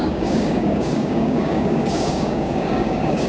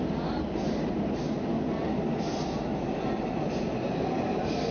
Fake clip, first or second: first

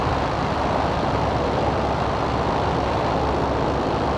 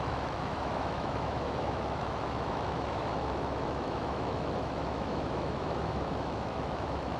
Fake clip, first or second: second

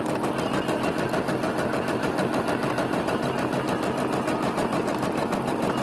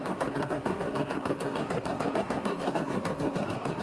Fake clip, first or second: second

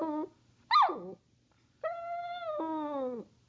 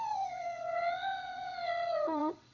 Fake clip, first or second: second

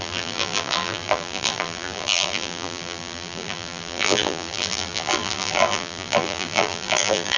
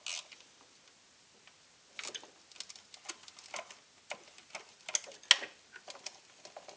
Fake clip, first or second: first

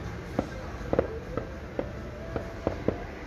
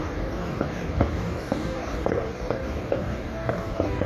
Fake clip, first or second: second